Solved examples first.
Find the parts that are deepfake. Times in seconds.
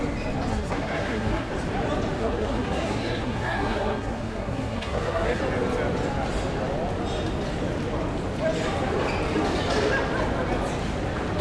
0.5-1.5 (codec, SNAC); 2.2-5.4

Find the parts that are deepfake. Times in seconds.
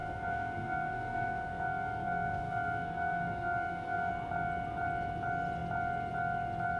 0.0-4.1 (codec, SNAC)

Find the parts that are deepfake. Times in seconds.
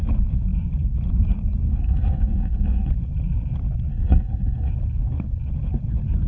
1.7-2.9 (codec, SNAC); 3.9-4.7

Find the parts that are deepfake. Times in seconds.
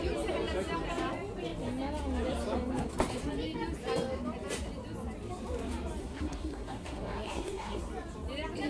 6.0-7.9 (codec, SNAC)